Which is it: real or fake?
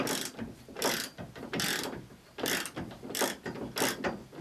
real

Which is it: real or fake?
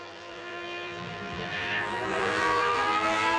fake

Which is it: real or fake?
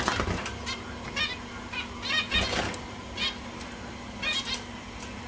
real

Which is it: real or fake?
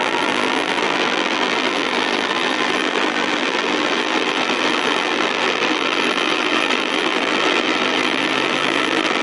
fake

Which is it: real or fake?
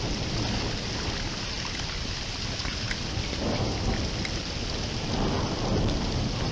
real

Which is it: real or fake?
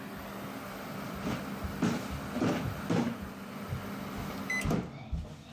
real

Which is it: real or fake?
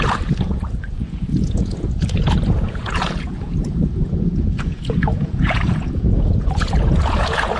fake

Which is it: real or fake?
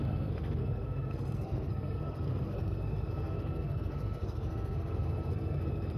fake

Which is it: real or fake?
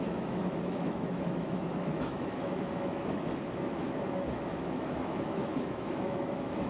fake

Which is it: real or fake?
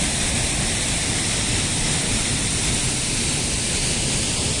real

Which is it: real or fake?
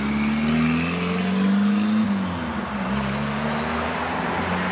real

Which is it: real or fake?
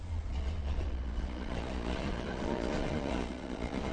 fake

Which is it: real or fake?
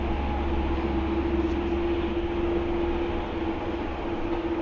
real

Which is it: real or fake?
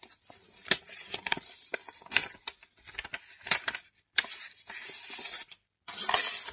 real